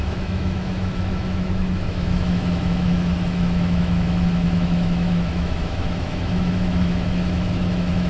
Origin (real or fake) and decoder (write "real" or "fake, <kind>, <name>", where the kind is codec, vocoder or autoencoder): fake, autoencoder, DAC-VAE